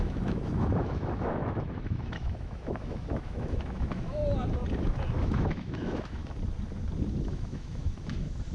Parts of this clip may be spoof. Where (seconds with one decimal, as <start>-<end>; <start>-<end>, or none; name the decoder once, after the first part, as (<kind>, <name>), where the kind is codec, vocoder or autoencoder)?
0.0-4.2 (autoencoder, DAC-VAE); 5.2-6.2; 7.2-8.5